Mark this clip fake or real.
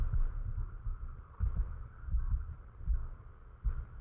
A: real